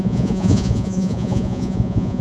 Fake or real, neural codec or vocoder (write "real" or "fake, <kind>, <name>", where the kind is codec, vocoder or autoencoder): fake, vocoder, Vocos